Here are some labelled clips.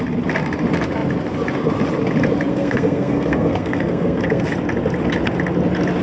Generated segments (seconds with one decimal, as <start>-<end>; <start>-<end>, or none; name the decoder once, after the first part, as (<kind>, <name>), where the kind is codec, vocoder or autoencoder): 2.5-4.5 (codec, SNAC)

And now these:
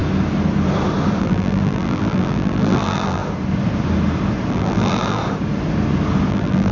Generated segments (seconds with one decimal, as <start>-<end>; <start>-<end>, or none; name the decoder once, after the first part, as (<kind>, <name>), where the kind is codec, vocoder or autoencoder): 1.2-3.2 (vocoder, BigVGAN v2); 4.5-5.2; 6.3-6.7

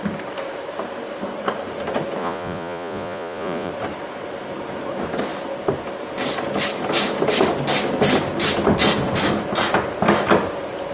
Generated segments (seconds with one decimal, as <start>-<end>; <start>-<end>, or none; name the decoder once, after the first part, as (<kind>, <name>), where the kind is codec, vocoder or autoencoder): 2.2-3.7 (vocoder, Vocos)

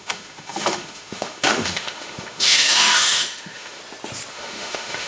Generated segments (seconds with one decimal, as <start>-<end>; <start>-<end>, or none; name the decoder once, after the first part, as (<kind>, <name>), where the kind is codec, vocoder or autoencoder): 0.0-3.8 (autoencoder, DAC-VAE); 4.3-5.1

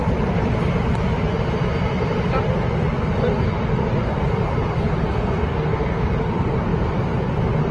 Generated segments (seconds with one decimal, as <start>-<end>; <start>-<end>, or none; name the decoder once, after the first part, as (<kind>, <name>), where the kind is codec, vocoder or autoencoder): 5.0-6.1 (codec, SNAC)

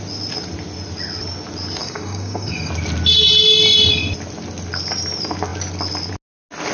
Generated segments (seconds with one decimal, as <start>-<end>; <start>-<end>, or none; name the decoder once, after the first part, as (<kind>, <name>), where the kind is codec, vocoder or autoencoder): 1.8-2.7 (codec, DAC)